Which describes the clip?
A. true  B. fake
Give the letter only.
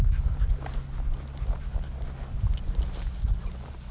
A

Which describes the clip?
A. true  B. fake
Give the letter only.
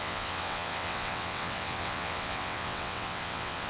B